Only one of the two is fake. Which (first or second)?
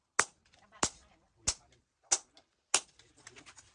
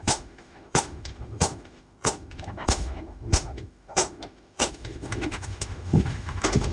second